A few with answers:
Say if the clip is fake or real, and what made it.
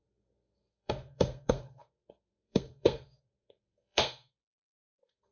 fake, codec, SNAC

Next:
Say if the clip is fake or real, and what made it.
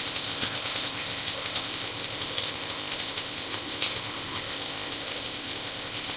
fake, codec, ZipCodec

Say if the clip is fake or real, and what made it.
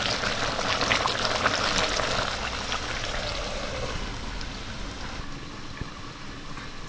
real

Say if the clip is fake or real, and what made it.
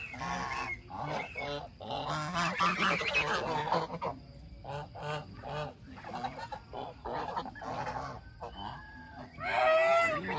real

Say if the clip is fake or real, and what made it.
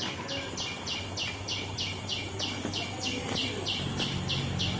real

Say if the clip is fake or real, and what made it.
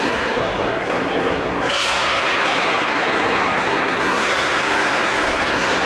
fake, codec, SNAC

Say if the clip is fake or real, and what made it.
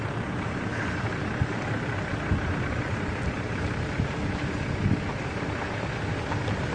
real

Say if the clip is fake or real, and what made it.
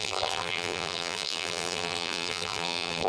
fake, vocoder, BigVGAN v2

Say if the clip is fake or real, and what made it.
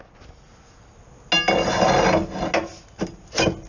real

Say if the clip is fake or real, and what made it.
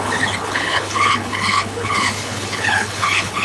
fake, codec, HILCodec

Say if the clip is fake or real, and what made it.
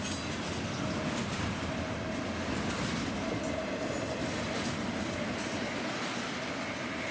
real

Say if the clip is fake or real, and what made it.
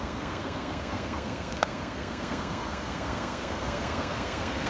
fake, codec, SNAC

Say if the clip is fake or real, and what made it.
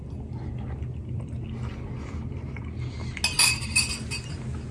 real